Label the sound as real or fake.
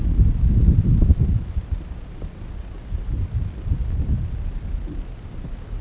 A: real